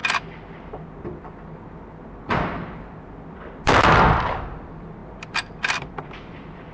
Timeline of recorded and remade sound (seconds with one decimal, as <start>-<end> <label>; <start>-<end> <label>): 0.0-0.6 recorded; 0.6-6.7 remade

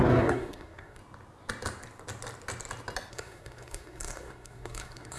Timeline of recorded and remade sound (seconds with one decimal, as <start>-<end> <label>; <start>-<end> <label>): 0.0-1.0 remade; 1.0-3.1 recorded; 3.1-5.2 remade

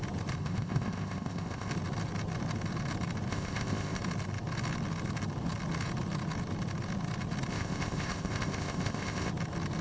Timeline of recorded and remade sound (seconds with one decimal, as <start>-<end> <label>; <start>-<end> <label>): 0.0-0.4 recorded; 0.4-1.7 remade; 1.7-3.3 recorded; 3.3-4.0 remade; 4.0-7.5 recorded; 7.5-9.3 remade; 9.3-9.8 recorded

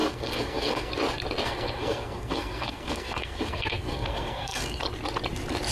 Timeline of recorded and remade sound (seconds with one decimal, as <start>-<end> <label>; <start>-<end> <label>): 0.0-0.9 remade; 0.9-1.4 recorded; 1.4-4.8 remade; 4.8-5.7 recorded

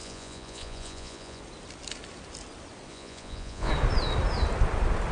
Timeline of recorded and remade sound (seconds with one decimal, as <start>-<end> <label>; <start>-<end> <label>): 0.0-1.4 remade; 1.4-2.9 recorded; 2.9-3.7 remade; 3.7-5.1 recorded

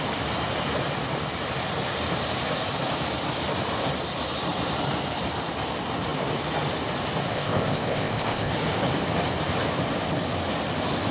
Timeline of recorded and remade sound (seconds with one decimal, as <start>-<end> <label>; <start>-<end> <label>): 0.0-7.3 recorded; 7.3-8.5 remade; 8.5-11.1 recorded